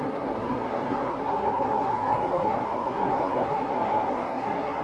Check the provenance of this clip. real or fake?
fake